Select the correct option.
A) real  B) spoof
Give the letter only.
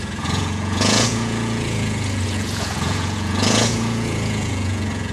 B